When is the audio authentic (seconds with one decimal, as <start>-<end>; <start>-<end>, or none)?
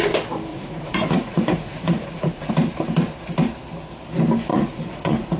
0.0-0.5; 2.5-4.5